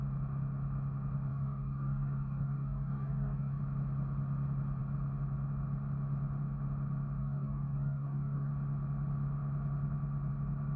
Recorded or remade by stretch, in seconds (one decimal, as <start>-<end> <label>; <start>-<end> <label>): 0.0-1.3 recorded; 1.3-3.6 remade; 3.6-7.2 recorded; 7.2-8.5 remade; 8.5-10.8 recorded